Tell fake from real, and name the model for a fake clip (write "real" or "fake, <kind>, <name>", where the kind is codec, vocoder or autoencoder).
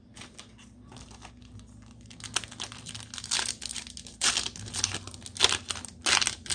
real